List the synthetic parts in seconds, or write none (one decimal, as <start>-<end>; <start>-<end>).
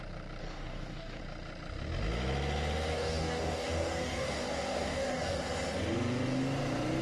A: 0.4-1.2; 2.9-5.4